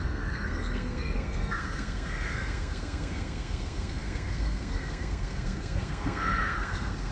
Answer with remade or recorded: remade